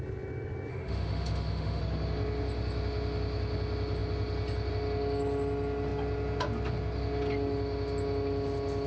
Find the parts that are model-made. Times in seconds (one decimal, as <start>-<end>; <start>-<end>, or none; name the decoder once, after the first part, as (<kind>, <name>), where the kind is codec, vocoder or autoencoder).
0.7-1.8 (autoencoder, DAC-VAE)